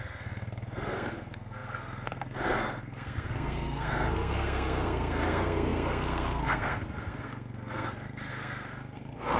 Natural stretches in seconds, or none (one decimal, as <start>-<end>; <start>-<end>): none